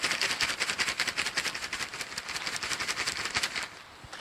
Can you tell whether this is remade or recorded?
recorded